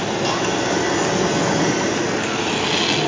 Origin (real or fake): real